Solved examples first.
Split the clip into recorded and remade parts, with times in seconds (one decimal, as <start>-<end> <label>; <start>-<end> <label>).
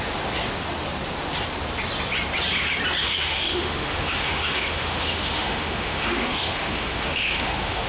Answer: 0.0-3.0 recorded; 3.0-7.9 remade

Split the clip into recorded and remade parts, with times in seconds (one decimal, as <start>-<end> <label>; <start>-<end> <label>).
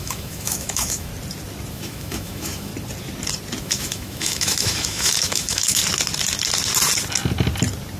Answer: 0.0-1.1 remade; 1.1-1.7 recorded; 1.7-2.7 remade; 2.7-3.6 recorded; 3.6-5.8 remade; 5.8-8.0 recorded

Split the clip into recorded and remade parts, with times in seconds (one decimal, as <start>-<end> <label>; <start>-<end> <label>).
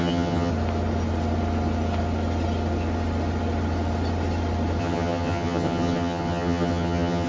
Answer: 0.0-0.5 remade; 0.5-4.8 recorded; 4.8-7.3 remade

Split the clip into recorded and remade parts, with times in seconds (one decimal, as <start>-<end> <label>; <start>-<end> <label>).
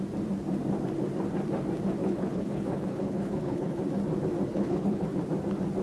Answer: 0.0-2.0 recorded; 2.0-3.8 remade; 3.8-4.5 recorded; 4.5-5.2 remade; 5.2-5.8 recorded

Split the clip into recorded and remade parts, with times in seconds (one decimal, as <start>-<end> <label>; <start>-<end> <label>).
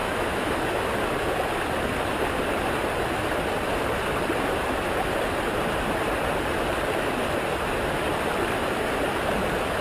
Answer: 0.0-0.6 remade; 0.6-9.8 recorded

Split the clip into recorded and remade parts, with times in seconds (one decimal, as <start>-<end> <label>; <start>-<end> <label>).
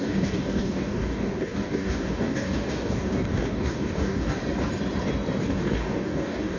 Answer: 0.0-4.4 remade; 4.4-5.4 recorded; 5.4-6.6 remade